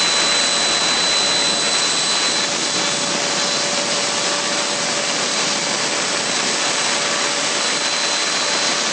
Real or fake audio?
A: real